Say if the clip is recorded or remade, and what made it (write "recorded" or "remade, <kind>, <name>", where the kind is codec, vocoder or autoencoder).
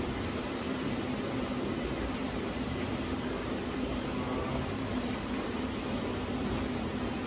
remade, vocoder, BigVGAN v2